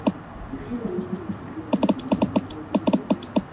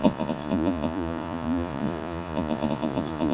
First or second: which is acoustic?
first